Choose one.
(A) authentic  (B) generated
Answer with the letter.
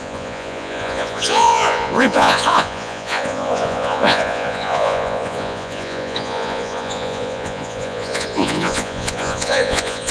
B